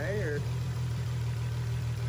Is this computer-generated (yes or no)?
yes